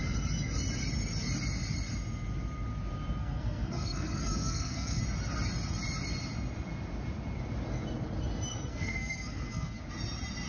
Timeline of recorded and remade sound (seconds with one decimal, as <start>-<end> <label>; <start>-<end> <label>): 0.0-3.2 recorded; 3.2-5.0 remade; 5.0-8.5 recorded; 8.5-9.8 remade; 9.8-10.5 recorded